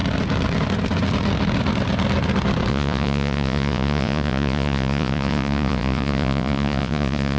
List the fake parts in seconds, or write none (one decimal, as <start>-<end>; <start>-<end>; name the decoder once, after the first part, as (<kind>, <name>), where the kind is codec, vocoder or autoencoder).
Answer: 2.7-7.4 (vocoder, Vocos)